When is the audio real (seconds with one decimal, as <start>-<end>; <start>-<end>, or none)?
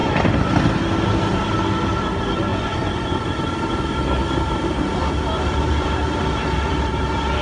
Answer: 0.0-2.5; 3.2-7.4